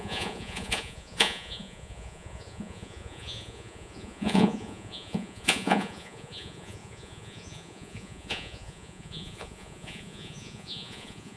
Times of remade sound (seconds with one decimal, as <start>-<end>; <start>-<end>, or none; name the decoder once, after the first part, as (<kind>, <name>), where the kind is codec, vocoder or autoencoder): 0.0-11.4 (vocoder, Vocos)